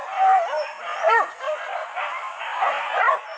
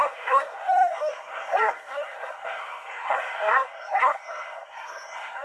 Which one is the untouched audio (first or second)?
first